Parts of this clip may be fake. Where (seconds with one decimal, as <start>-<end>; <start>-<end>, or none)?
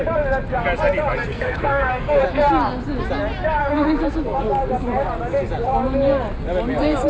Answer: 1.3-2.2; 3.6-4.4